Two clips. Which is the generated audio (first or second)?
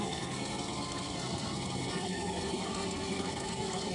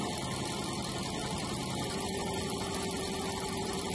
first